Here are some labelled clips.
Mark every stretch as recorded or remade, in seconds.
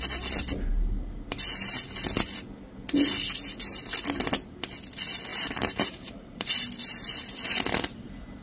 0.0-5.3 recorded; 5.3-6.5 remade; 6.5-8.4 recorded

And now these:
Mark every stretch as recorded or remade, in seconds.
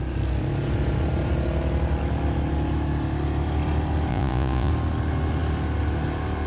0.0-4.1 recorded; 4.1-4.7 remade; 4.7-6.5 recorded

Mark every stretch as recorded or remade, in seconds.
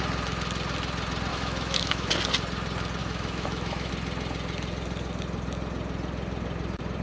0.0-1.3 recorded; 1.3-2.1 remade; 2.1-3.0 recorded; 3.0-3.9 remade; 3.9-7.0 recorded